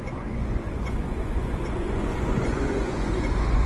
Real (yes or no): no